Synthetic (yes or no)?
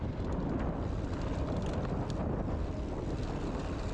no